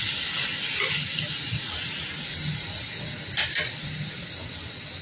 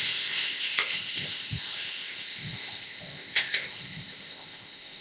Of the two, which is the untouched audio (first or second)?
first